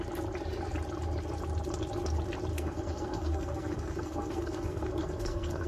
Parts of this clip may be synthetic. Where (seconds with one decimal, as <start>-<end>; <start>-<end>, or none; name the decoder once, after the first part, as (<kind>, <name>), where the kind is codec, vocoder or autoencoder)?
2.5-5.7 (codec, SNAC)